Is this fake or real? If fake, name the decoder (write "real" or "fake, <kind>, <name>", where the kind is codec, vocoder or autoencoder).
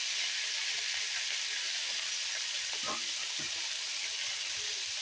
real